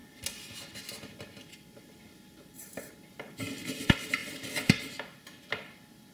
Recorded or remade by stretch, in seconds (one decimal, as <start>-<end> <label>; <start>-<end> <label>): 0.0-6.1 recorded